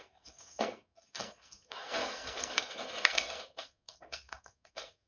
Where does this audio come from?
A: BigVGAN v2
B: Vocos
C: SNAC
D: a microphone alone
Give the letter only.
C